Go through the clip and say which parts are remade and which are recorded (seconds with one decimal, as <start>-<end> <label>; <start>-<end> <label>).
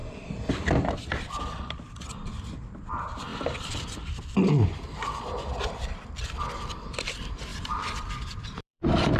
0.0-2.8 recorded; 2.8-9.2 remade